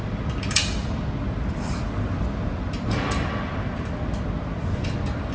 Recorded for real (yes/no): yes